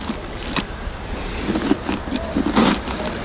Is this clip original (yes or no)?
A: yes